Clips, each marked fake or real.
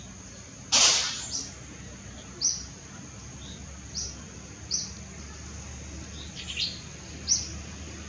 real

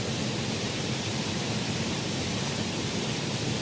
real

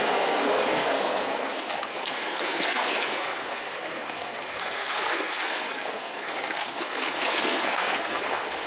fake